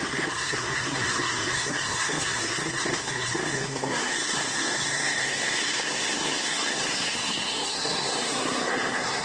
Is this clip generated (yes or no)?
yes